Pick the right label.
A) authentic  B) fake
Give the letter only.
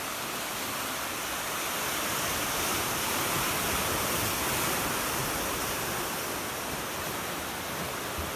A